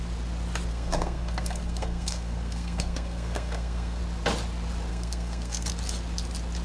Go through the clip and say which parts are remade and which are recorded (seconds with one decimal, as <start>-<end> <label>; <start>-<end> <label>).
0.0-0.7 recorded; 0.7-4.0 remade; 4.0-4.9 recorded; 4.9-5.7 remade; 5.7-6.6 recorded